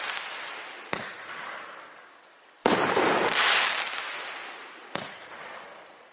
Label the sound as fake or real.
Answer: real